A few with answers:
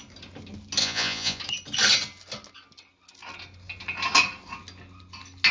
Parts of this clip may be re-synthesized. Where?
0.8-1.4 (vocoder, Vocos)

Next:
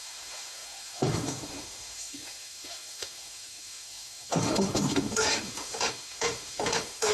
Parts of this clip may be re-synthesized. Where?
0.0-7.1 (autoencoder, DAC-VAE)